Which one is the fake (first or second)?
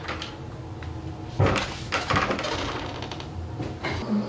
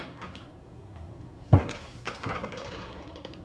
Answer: second